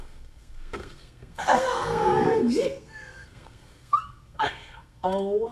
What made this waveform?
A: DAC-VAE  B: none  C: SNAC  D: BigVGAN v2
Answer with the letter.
C